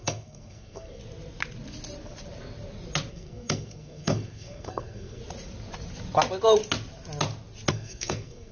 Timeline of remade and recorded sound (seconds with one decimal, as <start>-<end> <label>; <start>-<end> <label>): 0.0-1.0 remade; 1.0-3.1 recorded; 3.1-5.2 remade; 5.2-7.7 recorded; 7.7-8.5 remade

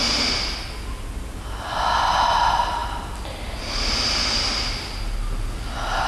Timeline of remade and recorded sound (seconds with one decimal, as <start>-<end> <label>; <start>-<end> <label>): 0.0-6.1 recorded